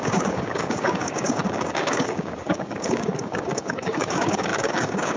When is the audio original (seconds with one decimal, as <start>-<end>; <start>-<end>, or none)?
none